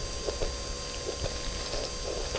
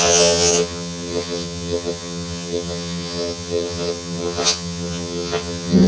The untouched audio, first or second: first